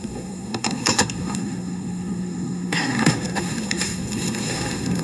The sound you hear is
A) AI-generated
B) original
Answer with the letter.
A